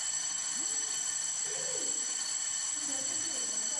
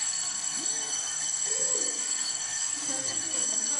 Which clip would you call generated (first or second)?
second